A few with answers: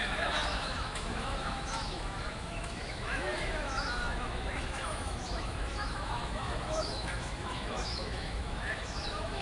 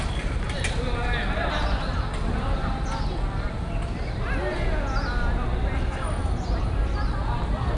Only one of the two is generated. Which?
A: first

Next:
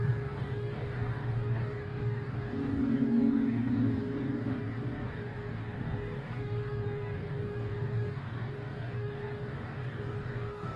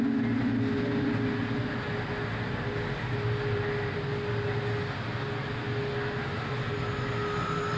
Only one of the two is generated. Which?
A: first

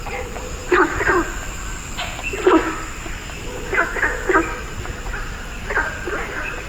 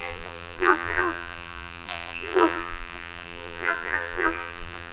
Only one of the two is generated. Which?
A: second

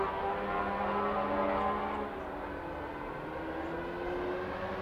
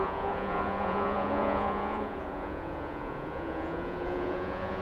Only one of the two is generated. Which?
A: second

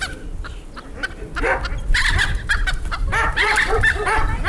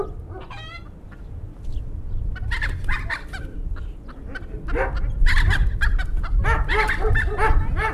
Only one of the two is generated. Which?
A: first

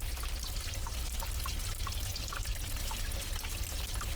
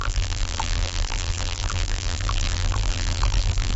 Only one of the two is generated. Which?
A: second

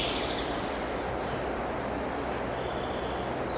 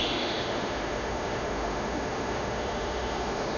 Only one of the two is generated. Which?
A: second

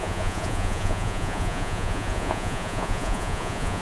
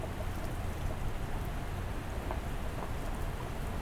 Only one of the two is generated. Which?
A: first